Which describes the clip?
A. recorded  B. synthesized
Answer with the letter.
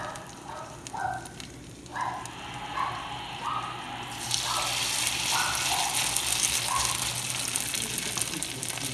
A